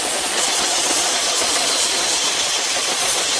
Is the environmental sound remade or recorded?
remade